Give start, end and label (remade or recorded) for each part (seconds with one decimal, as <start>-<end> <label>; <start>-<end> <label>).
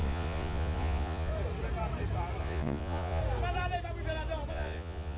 0.0-1.3 remade; 1.3-2.4 recorded; 2.4-3.2 remade; 3.2-4.5 recorded; 4.5-5.2 remade